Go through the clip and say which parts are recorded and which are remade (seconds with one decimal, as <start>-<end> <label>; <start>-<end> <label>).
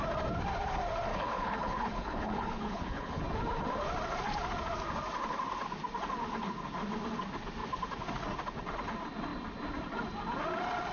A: 0.0-1.1 recorded; 1.1-3.2 remade; 3.2-10.9 recorded